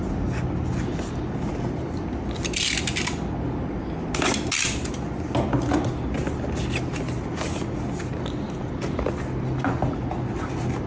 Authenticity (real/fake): real